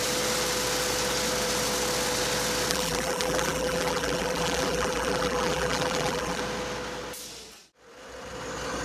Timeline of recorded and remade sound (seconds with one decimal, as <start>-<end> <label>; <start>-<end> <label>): 0.0-2.7 recorded; 2.7-6.4 remade; 6.4-8.8 recorded